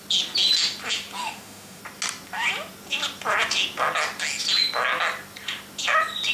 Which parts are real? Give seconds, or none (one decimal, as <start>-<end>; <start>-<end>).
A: 0.0-1.2; 1.8-6.3